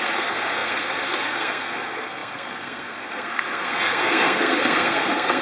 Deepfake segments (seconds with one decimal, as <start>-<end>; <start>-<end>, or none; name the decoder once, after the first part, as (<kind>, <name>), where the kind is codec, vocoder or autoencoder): 0.0-5.4 (codec, SNAC)